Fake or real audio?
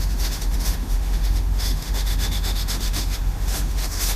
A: fake